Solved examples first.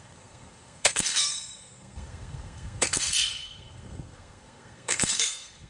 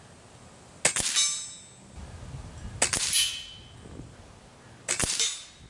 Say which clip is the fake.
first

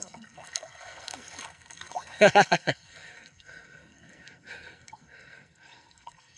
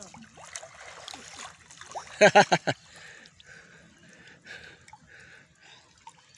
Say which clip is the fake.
first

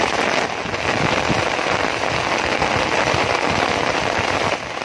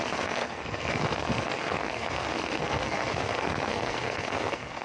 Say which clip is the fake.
second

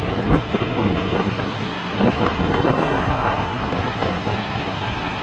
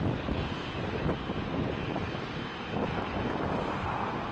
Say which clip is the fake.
first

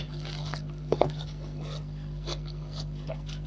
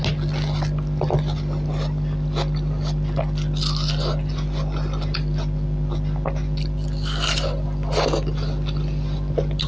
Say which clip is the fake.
first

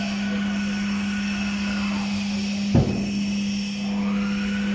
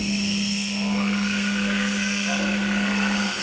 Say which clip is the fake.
second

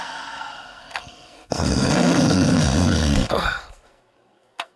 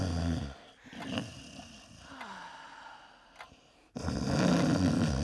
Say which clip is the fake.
first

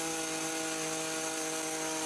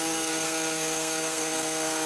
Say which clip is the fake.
second